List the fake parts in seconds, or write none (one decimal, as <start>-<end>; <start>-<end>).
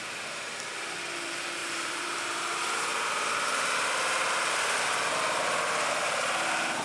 1.6-2.2